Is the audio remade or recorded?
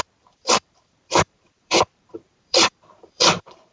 remade